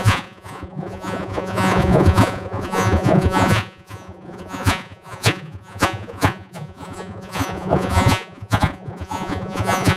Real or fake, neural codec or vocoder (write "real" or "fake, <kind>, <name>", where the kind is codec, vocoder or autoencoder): fake, vocoder, Vocos